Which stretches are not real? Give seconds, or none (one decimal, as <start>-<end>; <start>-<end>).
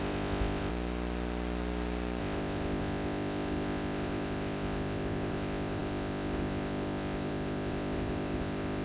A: 0.0-0.7; 2.2-8.8